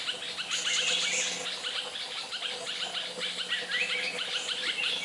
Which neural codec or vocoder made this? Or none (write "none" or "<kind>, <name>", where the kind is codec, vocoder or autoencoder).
none